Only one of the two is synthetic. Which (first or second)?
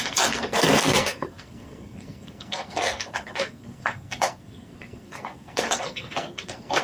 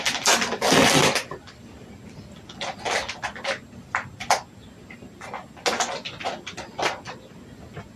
first